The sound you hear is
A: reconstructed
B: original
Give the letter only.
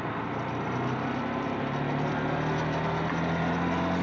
B